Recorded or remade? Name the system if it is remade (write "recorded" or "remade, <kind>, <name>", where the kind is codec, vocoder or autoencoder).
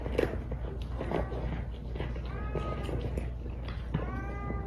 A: recorded